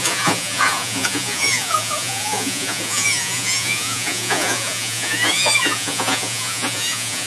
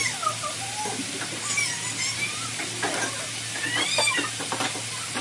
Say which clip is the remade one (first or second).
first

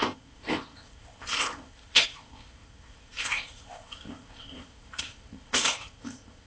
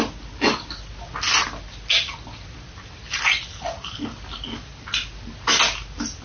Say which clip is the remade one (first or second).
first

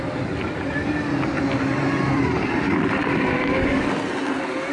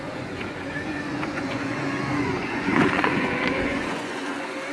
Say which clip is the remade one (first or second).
second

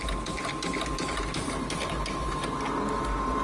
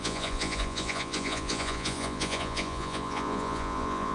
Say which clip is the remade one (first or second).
second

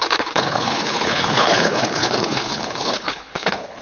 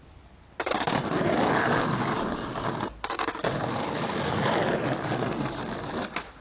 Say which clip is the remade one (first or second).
first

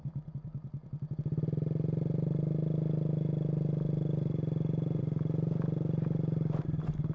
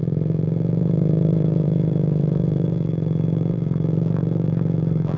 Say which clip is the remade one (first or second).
second